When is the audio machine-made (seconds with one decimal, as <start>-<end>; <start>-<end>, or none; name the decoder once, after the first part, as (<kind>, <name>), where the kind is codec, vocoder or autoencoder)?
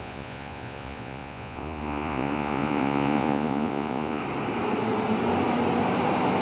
0.0-4.2 (vocoder, Vocos)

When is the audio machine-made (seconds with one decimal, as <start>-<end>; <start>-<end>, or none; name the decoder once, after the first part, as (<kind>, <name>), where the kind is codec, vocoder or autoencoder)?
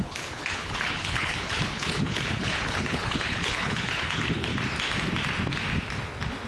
0.0-4.5 (codec, HILCodec)